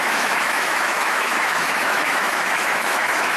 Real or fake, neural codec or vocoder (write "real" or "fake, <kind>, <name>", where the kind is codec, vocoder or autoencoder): fake, autoencoder, DAC-VAE